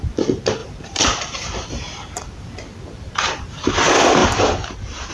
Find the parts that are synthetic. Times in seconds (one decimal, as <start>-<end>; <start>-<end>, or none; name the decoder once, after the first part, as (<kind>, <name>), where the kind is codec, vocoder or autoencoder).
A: 0.6-3.7 (vocoder, BigVGAN v2); 4.2-5.1